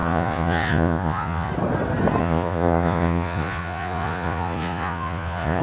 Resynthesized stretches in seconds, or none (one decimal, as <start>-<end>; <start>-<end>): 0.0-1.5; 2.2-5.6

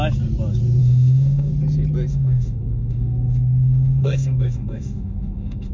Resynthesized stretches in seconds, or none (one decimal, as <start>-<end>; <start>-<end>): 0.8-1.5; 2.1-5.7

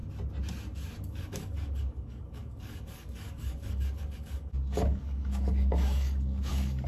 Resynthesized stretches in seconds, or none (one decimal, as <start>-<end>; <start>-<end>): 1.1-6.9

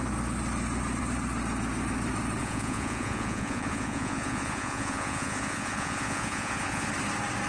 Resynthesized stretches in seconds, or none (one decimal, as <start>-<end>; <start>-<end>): 2.4-6.9

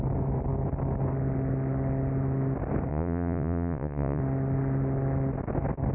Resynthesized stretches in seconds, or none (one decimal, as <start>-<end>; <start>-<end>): 2.9-4.2

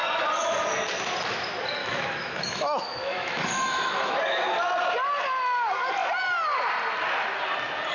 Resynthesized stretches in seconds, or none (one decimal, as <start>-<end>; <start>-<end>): 1.8-4.1

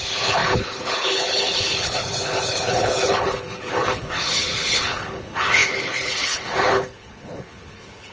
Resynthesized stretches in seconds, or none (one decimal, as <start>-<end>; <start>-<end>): 0.0-8.1

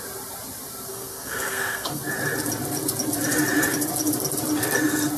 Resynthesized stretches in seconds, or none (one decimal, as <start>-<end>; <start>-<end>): 0.9-2.0